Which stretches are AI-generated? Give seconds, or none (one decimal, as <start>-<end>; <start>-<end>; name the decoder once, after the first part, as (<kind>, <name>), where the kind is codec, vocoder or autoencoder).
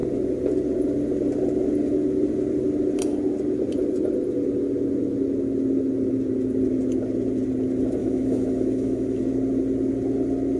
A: 8.0-9.2 (autoencoder, DAC-VAE)